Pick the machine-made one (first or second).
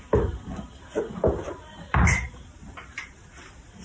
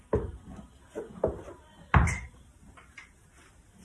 first